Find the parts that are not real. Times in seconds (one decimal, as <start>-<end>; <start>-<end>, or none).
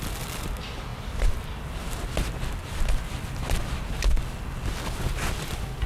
0.9-2.2